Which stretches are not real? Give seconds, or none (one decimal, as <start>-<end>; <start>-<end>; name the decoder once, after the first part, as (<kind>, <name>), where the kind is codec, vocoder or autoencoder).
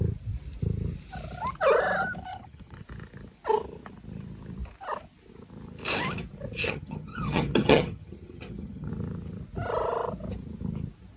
2.3-2.8 (vocoder, HiFi-GAN); 6.6-8.9